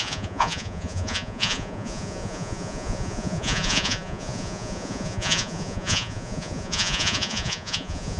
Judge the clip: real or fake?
fake